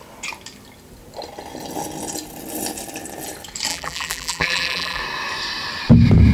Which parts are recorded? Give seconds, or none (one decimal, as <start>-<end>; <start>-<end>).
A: 0.0-3.7; 5.0-6.3